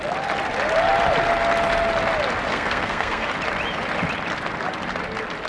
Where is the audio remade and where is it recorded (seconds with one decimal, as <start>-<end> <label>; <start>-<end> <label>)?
0.0-2.5 recorded; 2.5-3.3 remade; 3.3-5.5 recorded